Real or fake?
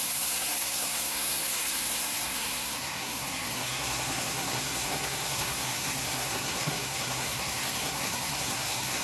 fake